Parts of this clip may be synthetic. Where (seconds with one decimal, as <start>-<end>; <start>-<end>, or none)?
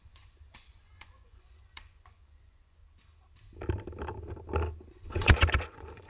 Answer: 0.0-2.8; 4.9-6.1